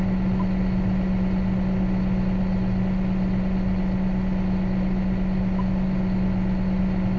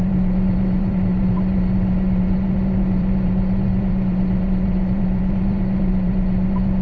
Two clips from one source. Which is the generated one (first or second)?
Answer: second